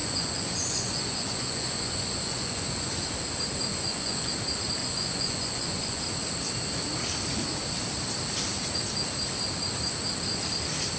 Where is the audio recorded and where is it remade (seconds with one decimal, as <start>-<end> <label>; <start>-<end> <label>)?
0.0-3.1 remade; 3.1-3.7 recorded; 3.7-4.3 remade; 4.3-4.8 recorded; 4.8-6.0 remade; 6.0-11.0 recorded